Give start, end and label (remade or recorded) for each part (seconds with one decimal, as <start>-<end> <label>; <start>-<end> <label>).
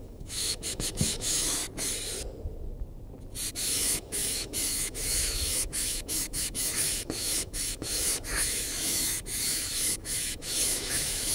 0.0-1.6 remade; 1.6-3.5 recorded; 3.5-11.3 remade